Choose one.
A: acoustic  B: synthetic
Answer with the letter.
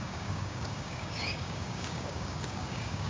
B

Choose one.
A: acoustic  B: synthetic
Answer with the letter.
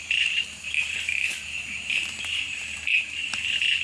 B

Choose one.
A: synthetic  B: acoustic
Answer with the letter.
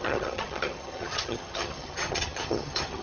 A